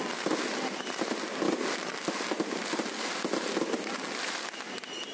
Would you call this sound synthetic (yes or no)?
no